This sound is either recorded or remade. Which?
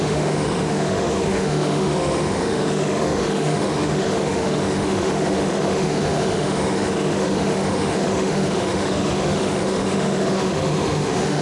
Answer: remade